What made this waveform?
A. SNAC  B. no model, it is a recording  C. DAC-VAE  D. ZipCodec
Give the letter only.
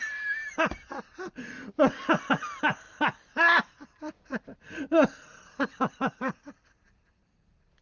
B